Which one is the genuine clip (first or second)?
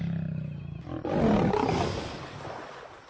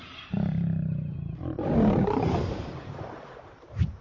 first